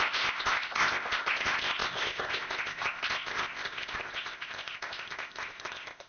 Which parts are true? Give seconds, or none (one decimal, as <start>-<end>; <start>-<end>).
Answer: none